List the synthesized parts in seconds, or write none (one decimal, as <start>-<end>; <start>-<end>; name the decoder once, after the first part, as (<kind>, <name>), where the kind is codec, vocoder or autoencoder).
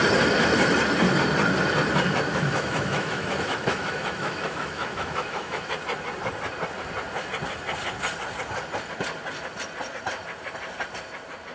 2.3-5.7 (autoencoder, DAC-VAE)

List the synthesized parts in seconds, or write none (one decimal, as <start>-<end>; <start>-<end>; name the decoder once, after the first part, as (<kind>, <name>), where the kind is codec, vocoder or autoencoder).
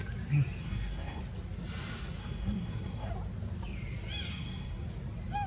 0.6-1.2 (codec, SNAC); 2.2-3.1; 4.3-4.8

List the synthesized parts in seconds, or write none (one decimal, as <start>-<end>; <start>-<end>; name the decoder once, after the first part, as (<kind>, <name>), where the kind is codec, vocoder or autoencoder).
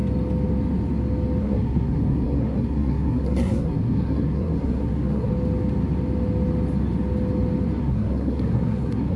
1.4-5.3 (codec, SNAC); 7.8-9.2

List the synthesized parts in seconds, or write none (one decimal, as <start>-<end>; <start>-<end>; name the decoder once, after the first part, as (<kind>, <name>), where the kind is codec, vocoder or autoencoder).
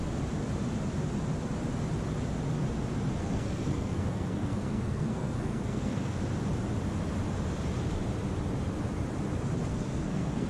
3.2-6.2 (codec, SNAC); 9.7-10.5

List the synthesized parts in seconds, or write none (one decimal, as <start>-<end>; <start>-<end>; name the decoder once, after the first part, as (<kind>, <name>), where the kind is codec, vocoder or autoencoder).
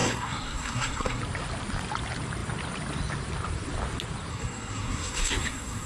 0.0-1.2 (codec, SNAC); 4.3-5.9